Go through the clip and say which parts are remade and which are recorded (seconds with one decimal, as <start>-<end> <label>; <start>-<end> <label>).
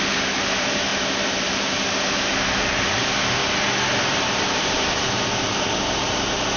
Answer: 0.0-3.4 remade; 3.4-4.0 recorded; 4.0-6.6 remade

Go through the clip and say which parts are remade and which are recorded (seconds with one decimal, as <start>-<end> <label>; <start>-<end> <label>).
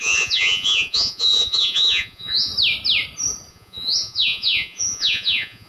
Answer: 0.0-2.5 remade; 2.5-3.5 recorded; 3.5-5.7 remade